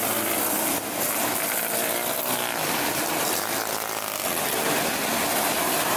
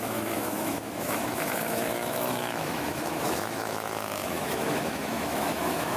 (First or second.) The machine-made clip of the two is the second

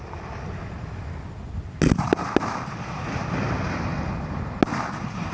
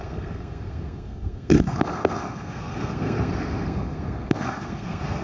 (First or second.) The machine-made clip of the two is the second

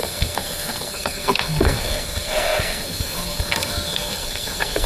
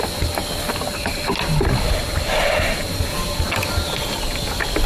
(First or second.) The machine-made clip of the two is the first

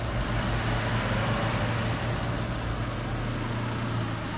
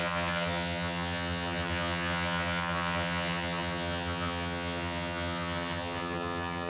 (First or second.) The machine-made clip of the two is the second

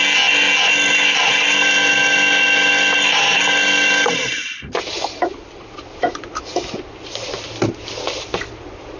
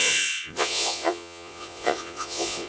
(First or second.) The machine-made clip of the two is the second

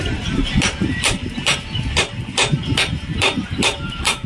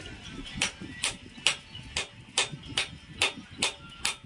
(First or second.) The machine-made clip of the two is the first